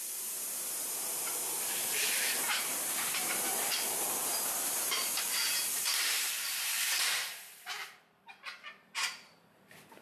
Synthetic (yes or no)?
yes